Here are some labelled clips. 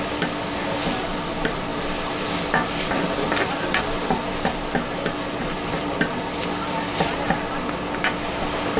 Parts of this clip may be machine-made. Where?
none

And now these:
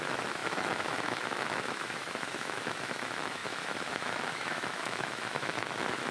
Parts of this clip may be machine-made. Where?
0.0-6.1 (autoencoder, DAC-VAE)

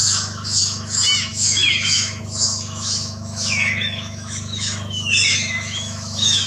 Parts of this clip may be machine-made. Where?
0.0-6.5 (autoencoder, DAC-VAE)

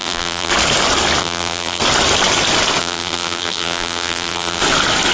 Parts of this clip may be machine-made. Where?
0.0-0.5 (vocoder, BigVGAN v2); 1.2-1.8; 2.8-4.6